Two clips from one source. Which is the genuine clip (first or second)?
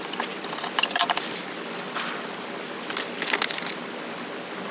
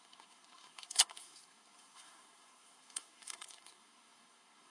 first